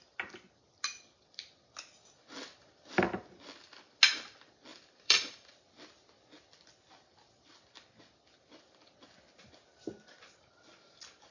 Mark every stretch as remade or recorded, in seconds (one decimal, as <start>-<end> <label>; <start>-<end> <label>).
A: 0.0-4.7 recorded; 4.7-5.5 remade; 5.5-11.3 recorded

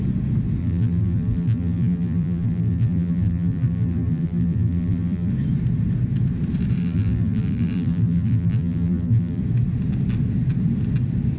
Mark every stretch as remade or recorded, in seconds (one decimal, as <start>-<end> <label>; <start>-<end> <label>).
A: 0.0-0.6 recorded; 0.6-5.3 remade; 5.3-6.8 recorded; 6.8-9.4 remade; 9.4-11.4 recorded